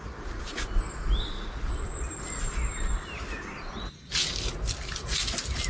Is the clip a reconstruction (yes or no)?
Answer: no